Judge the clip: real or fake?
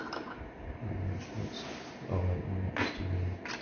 real